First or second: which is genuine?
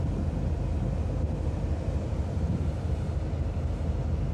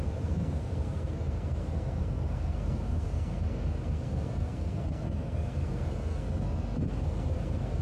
first